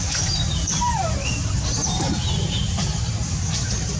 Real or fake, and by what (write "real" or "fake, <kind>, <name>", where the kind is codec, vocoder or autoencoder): fake, vocoder, BigVGAN v2